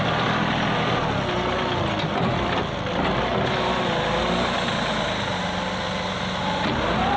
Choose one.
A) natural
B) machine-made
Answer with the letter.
A